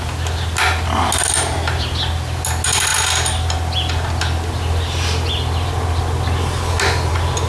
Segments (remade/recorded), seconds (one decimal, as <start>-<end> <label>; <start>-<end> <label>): 0.0-7.5 recorded